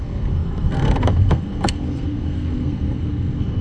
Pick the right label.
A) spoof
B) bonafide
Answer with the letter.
A